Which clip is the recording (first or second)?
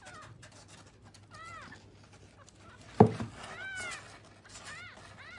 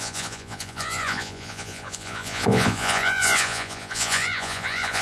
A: first